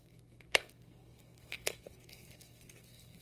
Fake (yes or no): yes